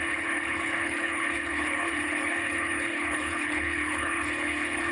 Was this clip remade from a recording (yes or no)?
yes